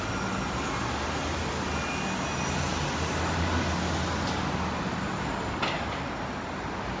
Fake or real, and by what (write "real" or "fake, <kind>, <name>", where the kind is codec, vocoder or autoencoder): real